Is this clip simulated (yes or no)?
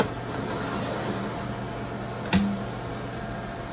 no